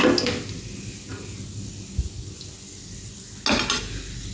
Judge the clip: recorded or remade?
recorded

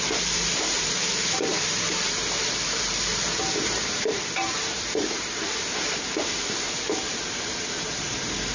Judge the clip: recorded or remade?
remade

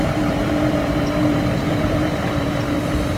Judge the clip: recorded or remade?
remade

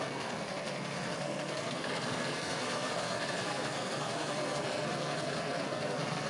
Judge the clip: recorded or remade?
remade